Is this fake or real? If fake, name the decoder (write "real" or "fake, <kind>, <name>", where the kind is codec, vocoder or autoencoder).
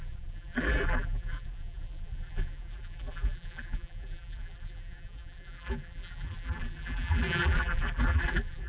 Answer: fake, vocoder, BigVGAN v2